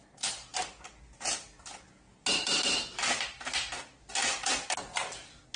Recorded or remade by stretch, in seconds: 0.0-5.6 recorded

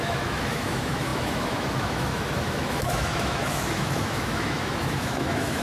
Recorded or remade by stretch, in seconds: 0.0-5.6 remade

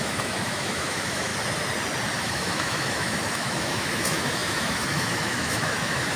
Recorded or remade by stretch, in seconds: 0.0-1.3 remade; 1.3-2.2 recorded; 2.2-6.2 remade

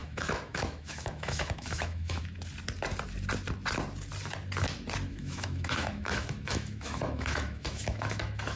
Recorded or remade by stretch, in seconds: 0.0-2.2 remade; 2.2-5.1 recorded; 5.1-8.6 remade

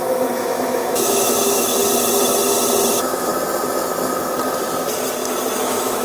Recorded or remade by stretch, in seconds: 0.0-1.7 remade; 1.7-2.9 recorded; 2.9-3.3 remade; 3.3-5.6 recorded; 5.6-6.0 remade